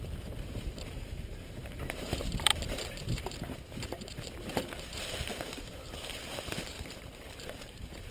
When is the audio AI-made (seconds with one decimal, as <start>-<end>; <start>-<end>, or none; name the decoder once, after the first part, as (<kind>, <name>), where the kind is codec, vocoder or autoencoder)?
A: 0.0-8.1 (vocoder, BigVGAN v2)